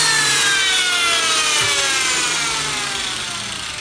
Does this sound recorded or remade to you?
recorded